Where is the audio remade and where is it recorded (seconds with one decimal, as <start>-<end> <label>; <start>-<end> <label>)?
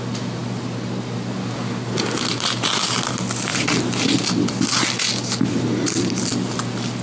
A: 0.0-7.0 recorded